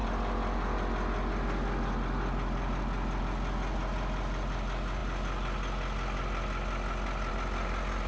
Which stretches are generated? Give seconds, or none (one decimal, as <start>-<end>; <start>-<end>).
none